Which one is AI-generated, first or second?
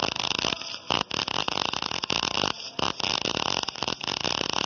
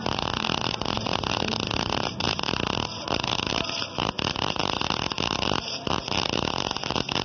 second